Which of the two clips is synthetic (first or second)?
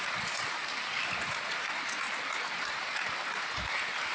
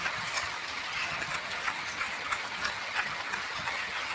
second